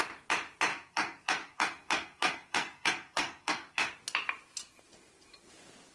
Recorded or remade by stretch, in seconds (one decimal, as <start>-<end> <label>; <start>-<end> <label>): 0.0-0.7 recorded; 0.7-3.9 remade; 3.9-5.9 recorded